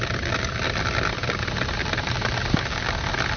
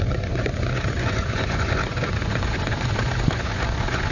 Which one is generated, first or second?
second